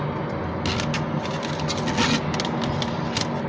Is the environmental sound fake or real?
real